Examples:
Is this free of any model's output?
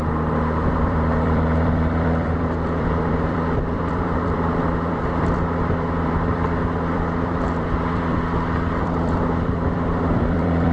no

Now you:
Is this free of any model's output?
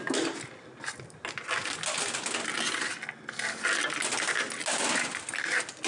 yes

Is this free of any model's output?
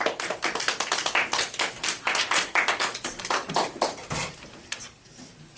yes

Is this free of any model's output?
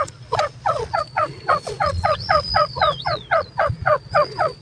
no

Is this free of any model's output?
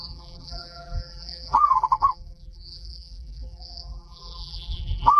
no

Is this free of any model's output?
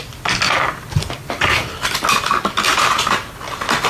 yes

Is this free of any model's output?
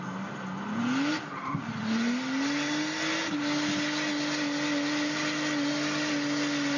yes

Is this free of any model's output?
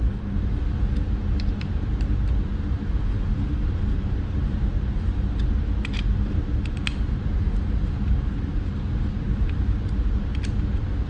no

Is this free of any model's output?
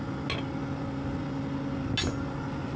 yes